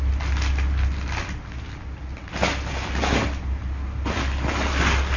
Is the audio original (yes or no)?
yes